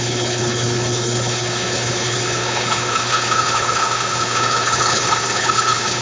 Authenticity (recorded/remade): remade